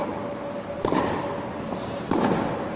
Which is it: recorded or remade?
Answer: recorded